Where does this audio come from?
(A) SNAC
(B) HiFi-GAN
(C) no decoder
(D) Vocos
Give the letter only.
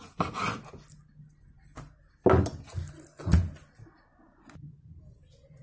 C